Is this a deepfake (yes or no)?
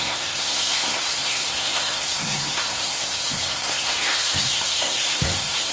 yes